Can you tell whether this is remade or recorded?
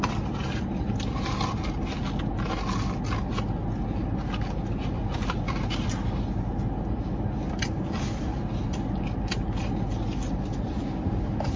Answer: recorded